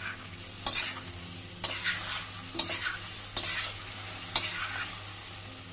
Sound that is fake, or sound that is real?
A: real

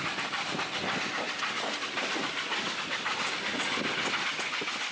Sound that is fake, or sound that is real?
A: real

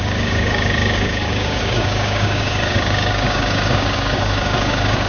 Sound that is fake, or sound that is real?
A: fake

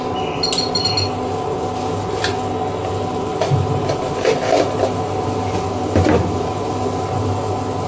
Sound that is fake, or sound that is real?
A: real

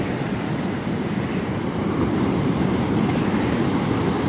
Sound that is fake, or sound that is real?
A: real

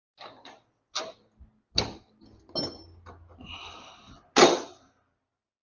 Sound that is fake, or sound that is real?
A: real